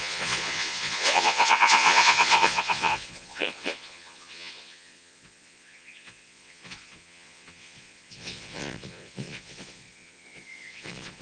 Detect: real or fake fake